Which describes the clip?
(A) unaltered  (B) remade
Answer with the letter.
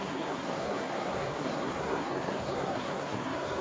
B